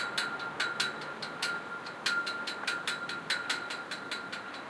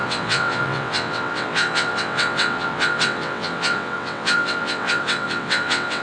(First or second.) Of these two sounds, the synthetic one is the second